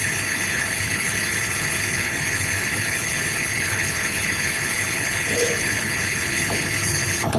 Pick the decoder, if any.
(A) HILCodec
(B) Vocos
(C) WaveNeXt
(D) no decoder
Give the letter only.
A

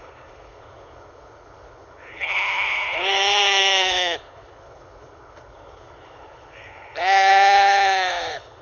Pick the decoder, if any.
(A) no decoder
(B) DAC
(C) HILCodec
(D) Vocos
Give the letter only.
C